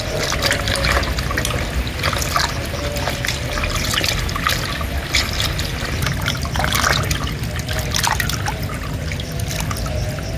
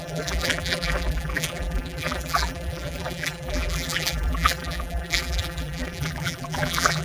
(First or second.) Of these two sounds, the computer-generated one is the second